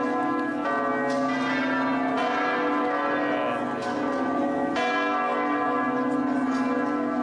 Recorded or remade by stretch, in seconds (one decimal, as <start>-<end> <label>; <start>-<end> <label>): 0.0-7.2 recorded